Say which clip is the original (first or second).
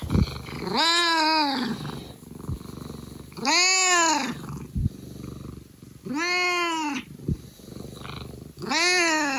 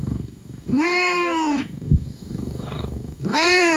first